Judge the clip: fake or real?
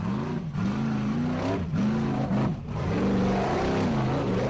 real